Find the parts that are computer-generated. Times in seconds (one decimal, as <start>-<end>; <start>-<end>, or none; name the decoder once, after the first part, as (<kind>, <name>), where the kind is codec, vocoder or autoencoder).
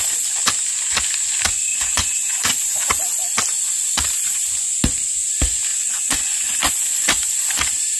1.7-2.9 (vocoder, Vocos); 5.7-6.7